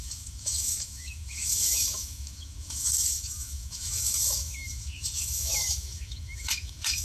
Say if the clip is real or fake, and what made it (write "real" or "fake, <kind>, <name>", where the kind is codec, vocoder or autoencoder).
fake, autoencoder, DAC-VAE